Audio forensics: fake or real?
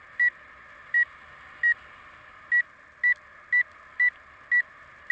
real